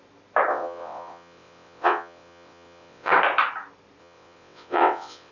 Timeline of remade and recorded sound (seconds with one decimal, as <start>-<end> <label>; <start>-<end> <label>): 0.0-0.5 recorded; 0.5-3.1 remade; 3.1-4.0 recorded; 4.0-5.3 remade